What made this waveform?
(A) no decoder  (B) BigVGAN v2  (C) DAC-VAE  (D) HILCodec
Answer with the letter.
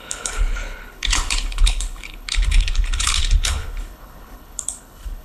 D